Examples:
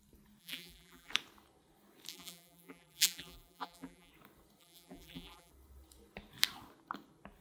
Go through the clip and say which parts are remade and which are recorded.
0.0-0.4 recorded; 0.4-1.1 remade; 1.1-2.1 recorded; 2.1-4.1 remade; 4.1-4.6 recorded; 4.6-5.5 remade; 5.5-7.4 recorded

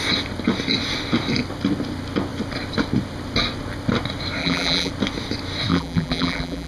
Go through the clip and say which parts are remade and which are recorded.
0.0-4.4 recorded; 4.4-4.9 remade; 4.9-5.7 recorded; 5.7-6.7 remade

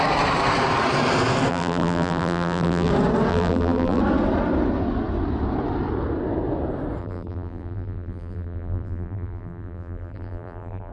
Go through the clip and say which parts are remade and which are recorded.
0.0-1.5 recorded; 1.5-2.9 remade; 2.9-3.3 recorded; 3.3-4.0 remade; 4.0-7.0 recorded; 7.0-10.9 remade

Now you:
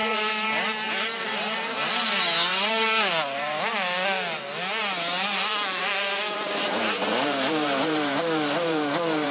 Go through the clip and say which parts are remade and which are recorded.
0.0-1.9 remade; 1.9-5.8 recorded; 5.8-9.3 remade